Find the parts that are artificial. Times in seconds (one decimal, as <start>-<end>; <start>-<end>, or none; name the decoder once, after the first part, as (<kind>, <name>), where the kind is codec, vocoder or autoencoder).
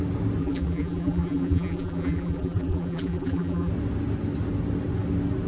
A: 0.4-3.7 (vocoder, BigVGAN v2)